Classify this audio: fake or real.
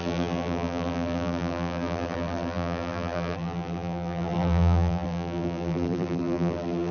fake